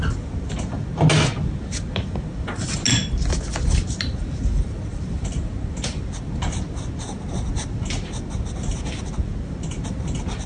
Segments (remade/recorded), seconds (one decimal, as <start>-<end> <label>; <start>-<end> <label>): 0.0-10.5 recorded